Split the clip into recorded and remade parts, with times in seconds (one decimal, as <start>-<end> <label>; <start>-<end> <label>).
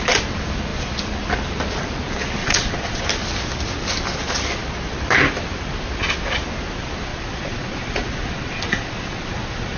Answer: 0.0-2.4 recorded; 2.4-3.0 remade; 3.0-7.1 recorded; 7.1-9.8 remade